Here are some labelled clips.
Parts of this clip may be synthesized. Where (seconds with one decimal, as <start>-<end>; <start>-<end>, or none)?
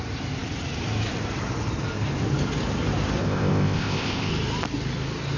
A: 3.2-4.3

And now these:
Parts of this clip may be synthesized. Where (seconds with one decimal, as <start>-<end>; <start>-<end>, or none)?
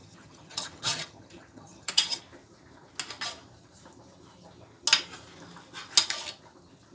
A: 0.0-2.2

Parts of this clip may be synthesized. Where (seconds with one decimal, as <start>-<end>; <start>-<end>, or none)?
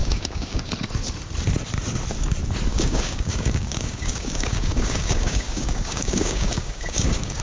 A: 0.0-0.7; 2.7-7.4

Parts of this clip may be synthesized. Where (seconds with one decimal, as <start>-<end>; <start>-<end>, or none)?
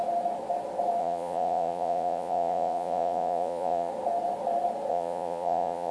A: 1.0-3.9; 4.9-5.9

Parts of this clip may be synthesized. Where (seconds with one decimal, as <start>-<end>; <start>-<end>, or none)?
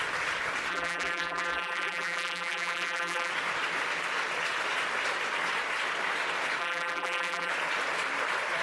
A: 0.7-3.3; 6.6-7.5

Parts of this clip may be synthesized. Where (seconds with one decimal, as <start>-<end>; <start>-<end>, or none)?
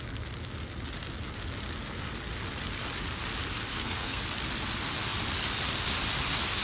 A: 3.7-4.2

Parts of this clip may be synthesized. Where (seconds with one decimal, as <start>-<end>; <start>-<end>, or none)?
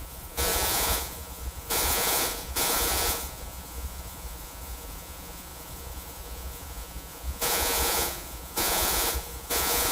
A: 0.0-9.9